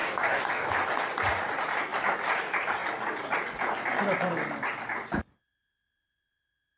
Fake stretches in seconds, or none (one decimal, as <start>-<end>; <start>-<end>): 0.0-0.7

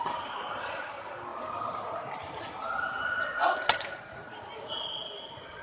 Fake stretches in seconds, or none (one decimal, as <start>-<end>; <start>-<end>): 0.0-1.3; 4.7-5.6

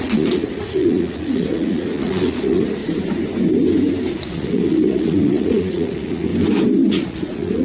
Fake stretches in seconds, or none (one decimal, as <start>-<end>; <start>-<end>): 0.0-2.8; 4.1-6.3; 6.9-7.6

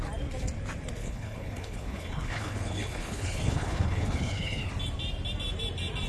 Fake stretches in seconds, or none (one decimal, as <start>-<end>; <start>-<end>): 1.0-4.7

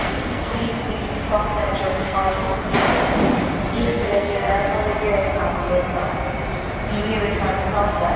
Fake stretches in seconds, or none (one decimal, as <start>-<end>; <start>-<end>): 0.0-0.7; 2.0-2.7; 3.8-4.5

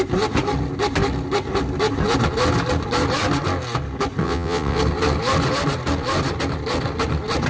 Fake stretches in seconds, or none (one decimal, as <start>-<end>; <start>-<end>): 4.2-4.8

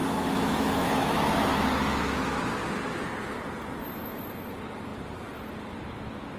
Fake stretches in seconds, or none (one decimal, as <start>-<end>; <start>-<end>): 0.0-2.4